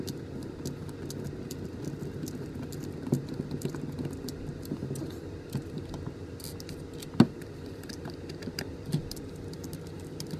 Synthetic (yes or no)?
no